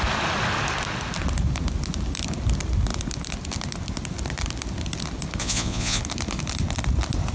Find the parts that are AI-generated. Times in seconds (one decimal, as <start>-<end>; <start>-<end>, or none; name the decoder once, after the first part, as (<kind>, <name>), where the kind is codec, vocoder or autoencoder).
5.4-6.0 (vocoder, Vocos)